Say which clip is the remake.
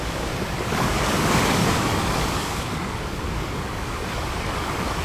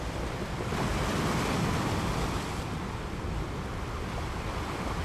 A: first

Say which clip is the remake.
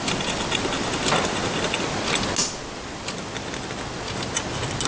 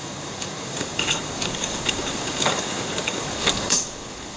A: second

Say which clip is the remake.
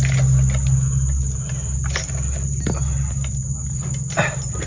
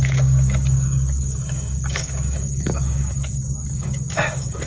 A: second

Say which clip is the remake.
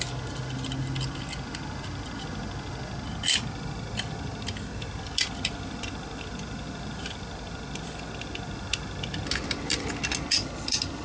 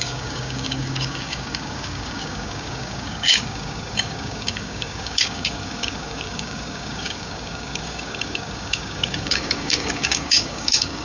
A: second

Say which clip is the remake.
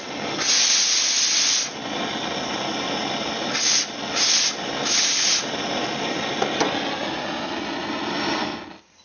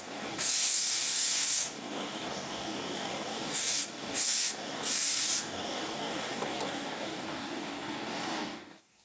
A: second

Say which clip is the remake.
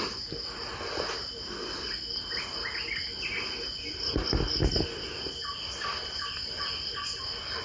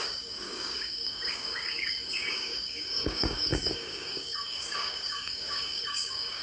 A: second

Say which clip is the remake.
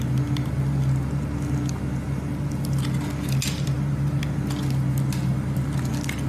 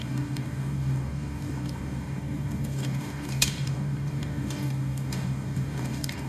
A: second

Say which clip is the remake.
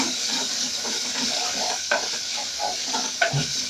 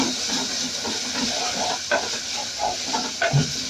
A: first